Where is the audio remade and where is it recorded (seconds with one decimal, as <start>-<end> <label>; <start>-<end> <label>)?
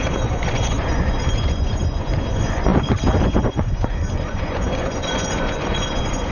0.0-6.3 remade